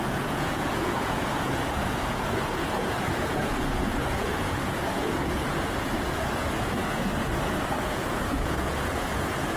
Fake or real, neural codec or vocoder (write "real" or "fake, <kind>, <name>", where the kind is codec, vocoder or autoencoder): fake, vocoder, Vocos